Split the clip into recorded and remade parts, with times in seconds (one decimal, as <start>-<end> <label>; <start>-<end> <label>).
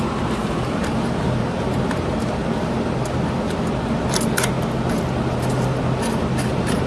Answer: 0.0-2.4 remade; 2.4-6.5 recorded; 6.5-6.9 remade